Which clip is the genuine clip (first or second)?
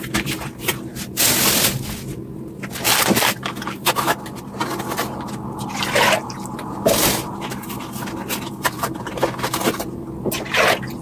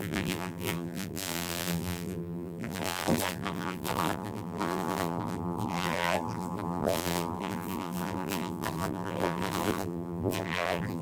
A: first